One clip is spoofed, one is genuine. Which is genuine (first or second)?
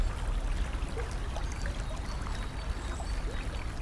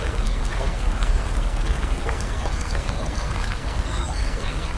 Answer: first